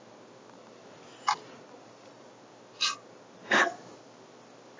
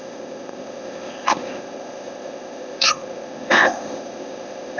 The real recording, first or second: first